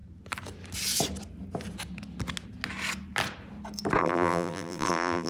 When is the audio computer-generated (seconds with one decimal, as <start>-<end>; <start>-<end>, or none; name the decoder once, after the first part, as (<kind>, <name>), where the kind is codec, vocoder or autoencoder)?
4.0-5.3 (vocoder, BigVGAN v2)